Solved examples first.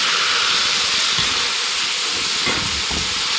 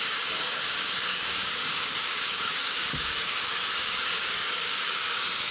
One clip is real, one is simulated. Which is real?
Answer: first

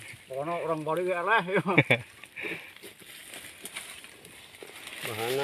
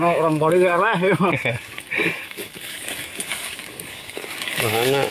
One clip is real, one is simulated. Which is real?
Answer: first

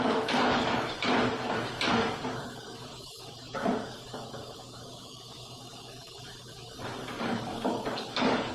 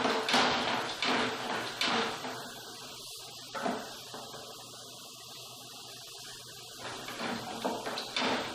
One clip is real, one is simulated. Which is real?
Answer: second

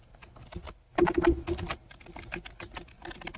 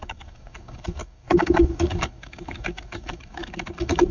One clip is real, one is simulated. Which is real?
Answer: first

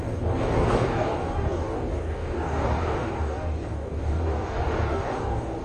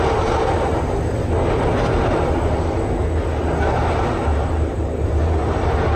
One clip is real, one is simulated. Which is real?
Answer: second